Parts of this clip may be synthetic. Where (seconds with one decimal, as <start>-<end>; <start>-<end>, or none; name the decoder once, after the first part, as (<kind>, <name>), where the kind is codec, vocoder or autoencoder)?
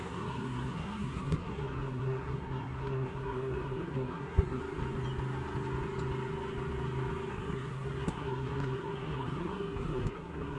0.0-4.6 (codec, SNAC); 7.3-10.6